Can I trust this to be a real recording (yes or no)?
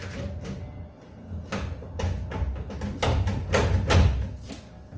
yes